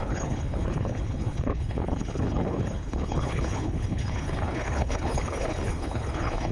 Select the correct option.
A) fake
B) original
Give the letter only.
A